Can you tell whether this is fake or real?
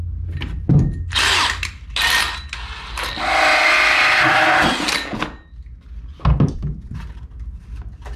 real